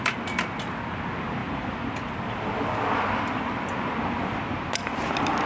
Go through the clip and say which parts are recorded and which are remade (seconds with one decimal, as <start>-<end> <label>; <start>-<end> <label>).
0.0-5.5 recorded